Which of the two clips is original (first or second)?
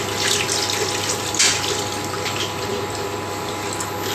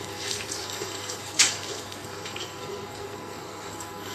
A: first